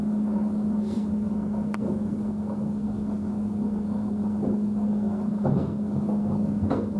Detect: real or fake fake